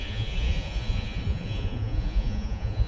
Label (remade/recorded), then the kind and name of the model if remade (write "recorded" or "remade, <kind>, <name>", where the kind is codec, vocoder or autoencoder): remade, vocoder, Vocos